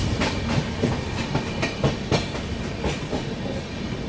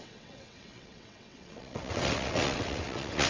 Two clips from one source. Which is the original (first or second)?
first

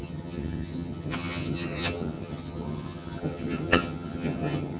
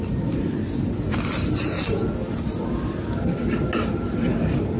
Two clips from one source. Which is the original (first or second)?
second